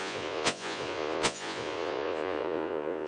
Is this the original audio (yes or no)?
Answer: no